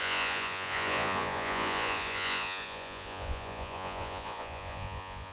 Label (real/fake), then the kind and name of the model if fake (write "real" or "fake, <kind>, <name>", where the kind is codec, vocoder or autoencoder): fake, vocoder, Vocos